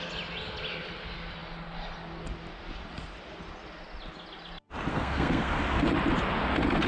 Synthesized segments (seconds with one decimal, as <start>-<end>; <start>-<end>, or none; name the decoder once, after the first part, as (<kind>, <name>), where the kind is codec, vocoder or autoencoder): 4.9-5.5 (codec, SNAC)